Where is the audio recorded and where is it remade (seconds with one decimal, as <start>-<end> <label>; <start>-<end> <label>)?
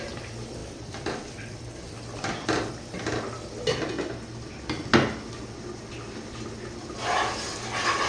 0.0-0.6 recorded; 0.6-2.7 remade; 2.7-8.1 recorded